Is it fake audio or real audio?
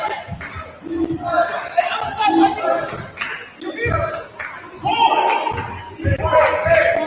real